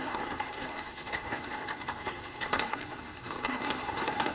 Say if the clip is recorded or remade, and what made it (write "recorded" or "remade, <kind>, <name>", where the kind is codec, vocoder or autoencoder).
remade, codec, SNAC